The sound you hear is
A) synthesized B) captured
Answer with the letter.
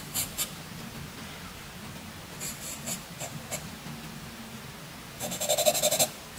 B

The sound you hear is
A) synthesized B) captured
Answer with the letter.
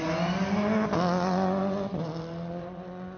B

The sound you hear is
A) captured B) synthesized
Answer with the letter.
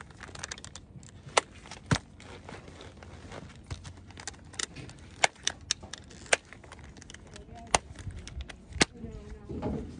A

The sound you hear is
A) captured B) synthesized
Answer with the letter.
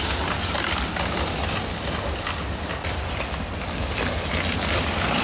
A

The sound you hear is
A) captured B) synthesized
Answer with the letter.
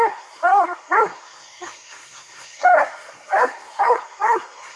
B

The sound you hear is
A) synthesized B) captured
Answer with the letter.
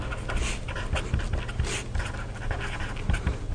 B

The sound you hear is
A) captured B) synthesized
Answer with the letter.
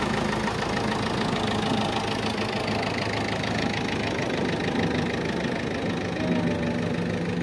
A